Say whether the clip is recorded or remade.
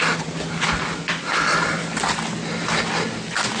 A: recorded